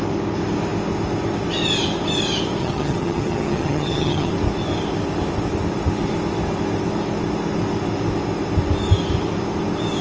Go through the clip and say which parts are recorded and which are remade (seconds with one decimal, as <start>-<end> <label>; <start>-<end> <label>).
0.0-2.6 recorded; 2.6-4.3 remade; 4.3-10.0 recorded